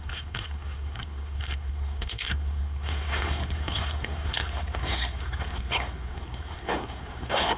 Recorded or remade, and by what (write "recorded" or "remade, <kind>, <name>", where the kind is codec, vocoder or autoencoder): remade, codec, SNAC